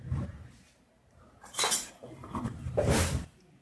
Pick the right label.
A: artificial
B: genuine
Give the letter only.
B